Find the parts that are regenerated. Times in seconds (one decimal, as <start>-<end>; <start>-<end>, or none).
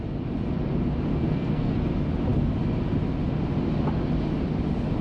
1.1-1.7